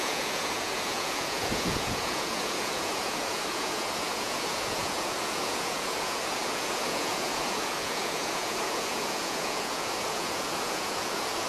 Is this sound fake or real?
fake